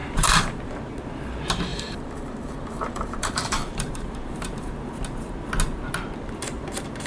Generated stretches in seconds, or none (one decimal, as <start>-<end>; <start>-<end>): 0.0-0.6; 1.7-4.7